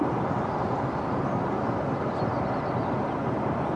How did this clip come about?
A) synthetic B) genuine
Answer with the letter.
B